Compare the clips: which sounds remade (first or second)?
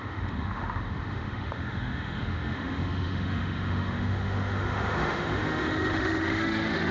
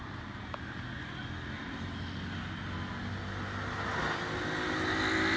first